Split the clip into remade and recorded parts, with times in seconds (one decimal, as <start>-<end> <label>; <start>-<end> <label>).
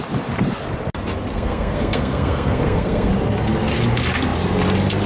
0.0-1.3 recorded; 1.3-3.1 remade; 3.1-5.1 recorded